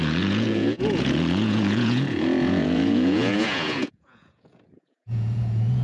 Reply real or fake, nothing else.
fake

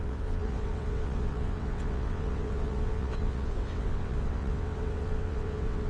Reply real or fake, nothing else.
fake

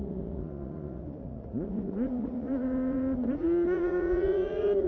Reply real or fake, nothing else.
fake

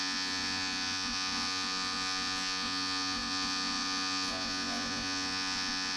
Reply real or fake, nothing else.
fake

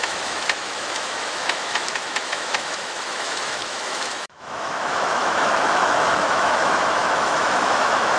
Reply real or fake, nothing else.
fake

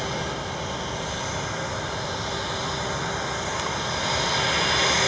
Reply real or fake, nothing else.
real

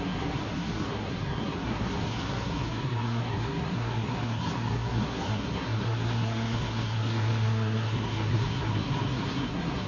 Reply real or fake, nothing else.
fake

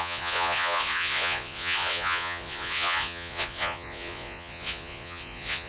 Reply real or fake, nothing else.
fake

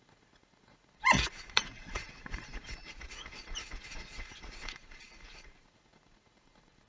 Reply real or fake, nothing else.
fake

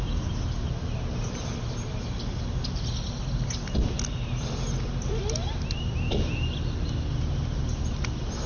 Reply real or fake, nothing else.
real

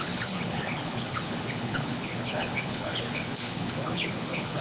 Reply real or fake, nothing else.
fake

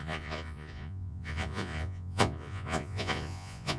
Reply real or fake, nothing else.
fake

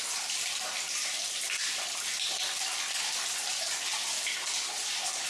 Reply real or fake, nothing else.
real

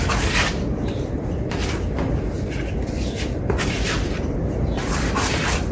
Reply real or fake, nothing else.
real